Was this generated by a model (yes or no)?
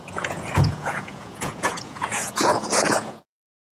yes